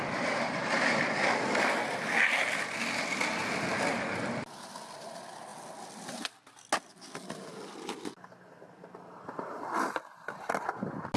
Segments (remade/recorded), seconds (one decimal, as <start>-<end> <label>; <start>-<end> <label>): 0.0-11.2 recorded